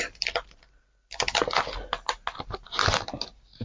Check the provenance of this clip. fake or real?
real